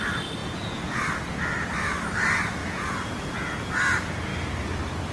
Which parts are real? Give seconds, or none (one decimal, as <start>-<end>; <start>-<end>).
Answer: 0.0-0.4; 1.0-2.6; 3.7-5.1